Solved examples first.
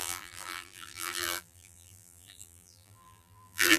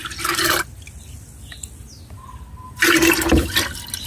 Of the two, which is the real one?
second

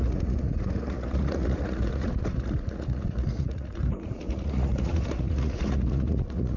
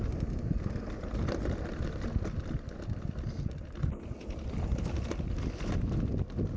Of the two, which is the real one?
second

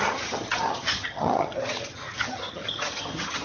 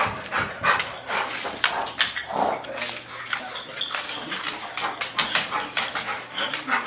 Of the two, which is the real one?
second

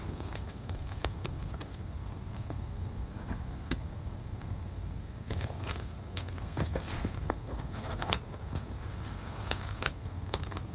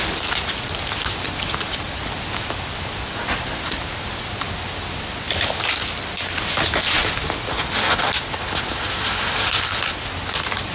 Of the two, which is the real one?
second